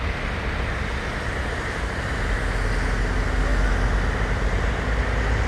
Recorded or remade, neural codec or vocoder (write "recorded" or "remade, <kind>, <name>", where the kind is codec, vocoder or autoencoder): recorded